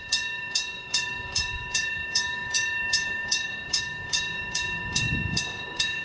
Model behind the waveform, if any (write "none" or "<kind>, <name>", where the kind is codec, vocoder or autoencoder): codec, DAC